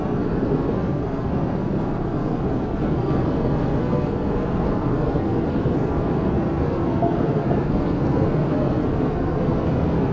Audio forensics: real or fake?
fake